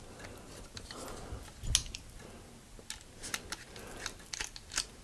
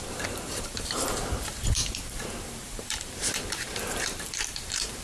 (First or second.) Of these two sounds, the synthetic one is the second